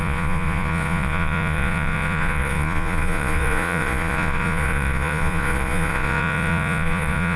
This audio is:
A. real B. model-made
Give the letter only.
B